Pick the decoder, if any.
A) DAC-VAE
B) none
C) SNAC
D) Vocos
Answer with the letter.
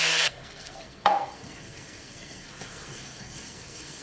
C